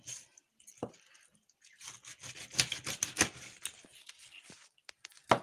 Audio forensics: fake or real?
real